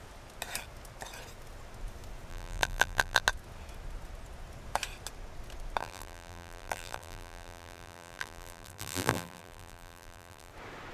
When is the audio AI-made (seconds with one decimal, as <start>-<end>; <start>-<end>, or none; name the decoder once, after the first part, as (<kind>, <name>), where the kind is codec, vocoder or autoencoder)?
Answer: 2.3-3.2 (vocoder, BigVGAN v2); 5.8-10.5